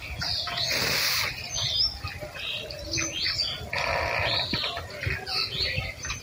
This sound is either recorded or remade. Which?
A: recorded